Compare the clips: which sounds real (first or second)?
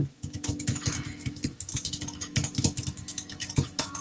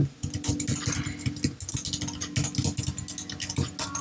second